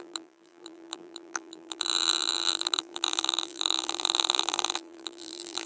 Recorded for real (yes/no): no